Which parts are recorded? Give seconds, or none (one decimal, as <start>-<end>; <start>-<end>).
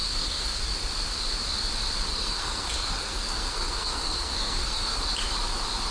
0.6-2.1; 5.0-5.9